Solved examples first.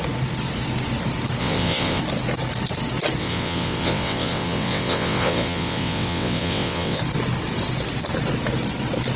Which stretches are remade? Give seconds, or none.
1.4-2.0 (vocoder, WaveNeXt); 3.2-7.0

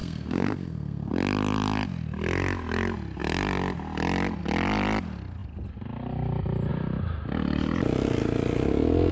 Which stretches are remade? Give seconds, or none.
0.0-1.1 (codec, SNAC)

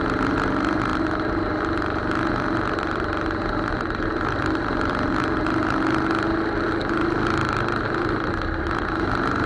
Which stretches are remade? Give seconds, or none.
none